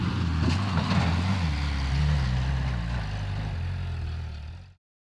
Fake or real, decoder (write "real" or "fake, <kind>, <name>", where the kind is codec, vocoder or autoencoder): real